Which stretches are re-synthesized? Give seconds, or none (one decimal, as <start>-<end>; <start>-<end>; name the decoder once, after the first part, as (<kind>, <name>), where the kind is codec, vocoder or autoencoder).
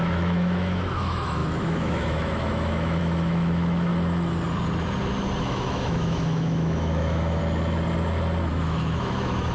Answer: 0.0-3.9 (autoencoder, DAC-VAE); 5.4-7.4; 8.5-9.5